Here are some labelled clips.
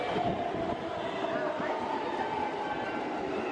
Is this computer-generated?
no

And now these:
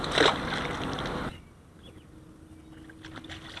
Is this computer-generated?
no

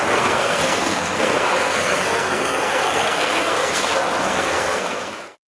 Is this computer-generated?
yes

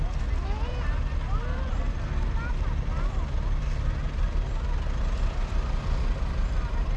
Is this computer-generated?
no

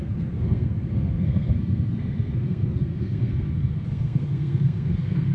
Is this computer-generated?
yes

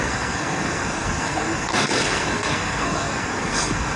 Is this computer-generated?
yes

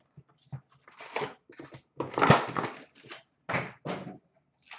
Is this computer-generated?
no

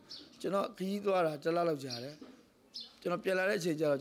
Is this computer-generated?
no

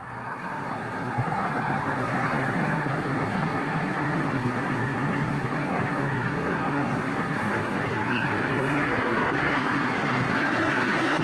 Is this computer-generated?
yes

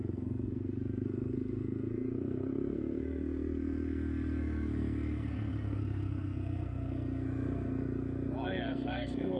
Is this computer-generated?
yes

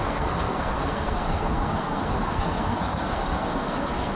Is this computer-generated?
yes